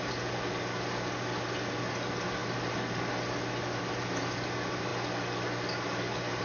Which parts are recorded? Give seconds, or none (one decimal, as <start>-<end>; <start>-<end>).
0.0-6.4